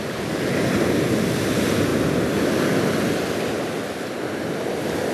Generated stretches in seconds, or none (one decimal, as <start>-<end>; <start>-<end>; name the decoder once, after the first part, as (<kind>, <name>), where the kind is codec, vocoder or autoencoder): none